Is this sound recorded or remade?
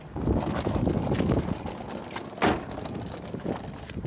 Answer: recorded